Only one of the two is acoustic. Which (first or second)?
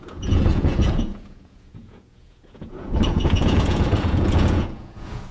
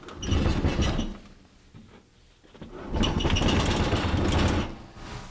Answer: second